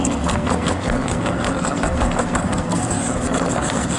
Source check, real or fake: fake